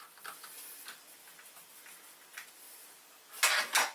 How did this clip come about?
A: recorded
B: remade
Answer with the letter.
A